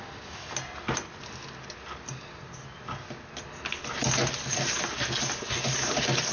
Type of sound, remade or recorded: recorded